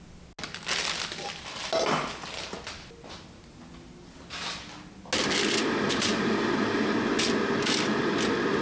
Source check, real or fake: real